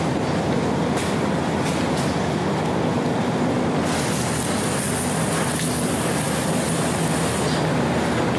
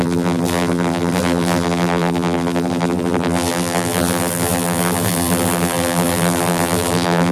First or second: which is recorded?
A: first